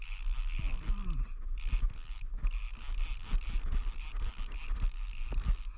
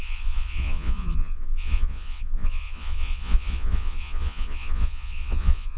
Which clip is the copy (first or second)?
second